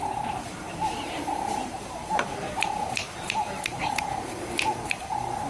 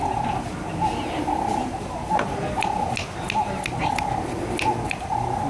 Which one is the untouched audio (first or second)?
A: second